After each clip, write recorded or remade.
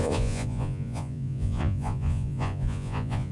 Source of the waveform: remade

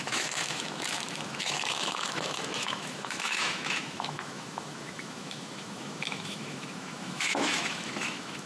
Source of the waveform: remade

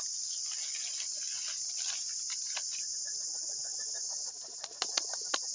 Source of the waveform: recorded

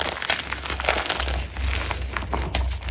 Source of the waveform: recorded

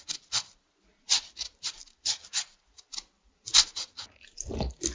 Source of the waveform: recorded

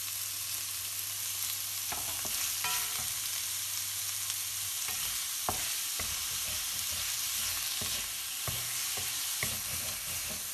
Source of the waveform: recorded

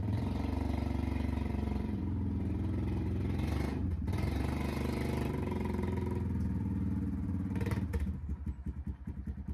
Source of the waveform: remade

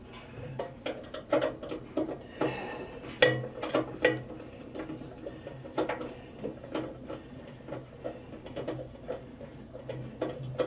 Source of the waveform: recorded